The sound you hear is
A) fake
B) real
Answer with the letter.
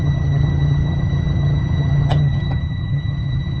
A